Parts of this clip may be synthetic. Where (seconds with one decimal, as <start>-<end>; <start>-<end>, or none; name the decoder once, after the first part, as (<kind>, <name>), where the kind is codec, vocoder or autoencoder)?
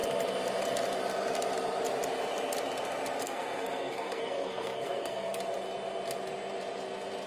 3.2-5.4 (codec, SNAC)